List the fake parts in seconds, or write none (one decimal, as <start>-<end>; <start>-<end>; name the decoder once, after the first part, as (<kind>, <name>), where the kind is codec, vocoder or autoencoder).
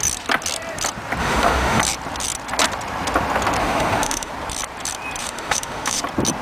1.2-1.8 (autoencoder, DAC-VAE); 3.6-4.3; 5.2-6.0